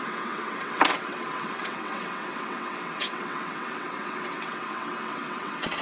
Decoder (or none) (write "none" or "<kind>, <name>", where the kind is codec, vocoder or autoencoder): vocoder, WaveNeXt